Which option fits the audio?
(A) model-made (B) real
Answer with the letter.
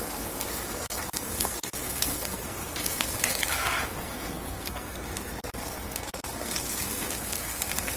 A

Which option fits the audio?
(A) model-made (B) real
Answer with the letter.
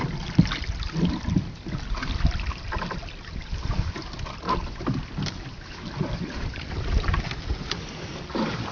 B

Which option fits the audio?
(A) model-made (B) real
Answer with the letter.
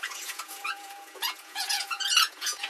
A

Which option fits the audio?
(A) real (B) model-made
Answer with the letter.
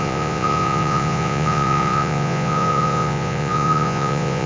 B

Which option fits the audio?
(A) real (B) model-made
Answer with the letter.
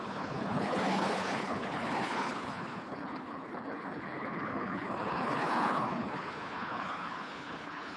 B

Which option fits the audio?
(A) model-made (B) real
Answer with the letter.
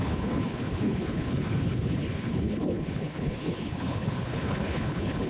A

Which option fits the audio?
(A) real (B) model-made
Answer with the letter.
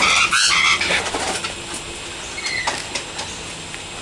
A